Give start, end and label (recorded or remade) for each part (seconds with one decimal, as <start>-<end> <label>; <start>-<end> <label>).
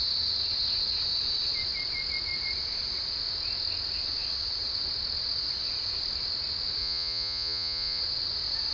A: 0.0-6.8 recorded; 6.8-8.0 remade; 8.0-8.7 recorded